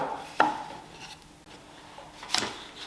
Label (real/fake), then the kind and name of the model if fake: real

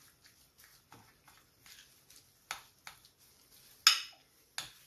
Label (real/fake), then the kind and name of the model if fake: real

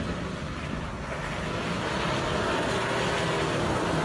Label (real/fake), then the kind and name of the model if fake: real